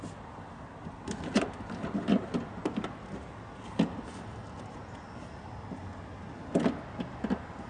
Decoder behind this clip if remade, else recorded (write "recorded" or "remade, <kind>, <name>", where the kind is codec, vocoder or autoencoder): recorded